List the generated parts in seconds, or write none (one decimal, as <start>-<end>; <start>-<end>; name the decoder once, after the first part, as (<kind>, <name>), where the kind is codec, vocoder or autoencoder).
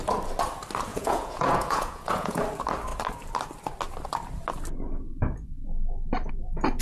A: 0.9-2.4 (vocoder, Vocos)